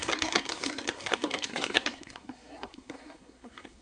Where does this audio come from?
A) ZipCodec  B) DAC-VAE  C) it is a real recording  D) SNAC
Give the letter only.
D